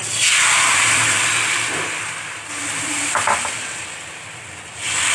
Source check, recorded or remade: remade